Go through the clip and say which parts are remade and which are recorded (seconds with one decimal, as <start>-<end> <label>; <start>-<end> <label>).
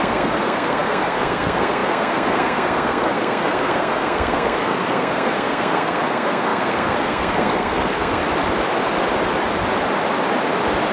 0.0-8.2 remade; 8.2-10.9 recorded